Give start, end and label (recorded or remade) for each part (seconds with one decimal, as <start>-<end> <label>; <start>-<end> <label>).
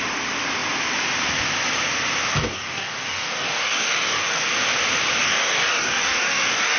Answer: 0.0-2.3 recorded; 2.3-4.5 remade; 4.5-5.2 recorded; 5.2-6.8 remade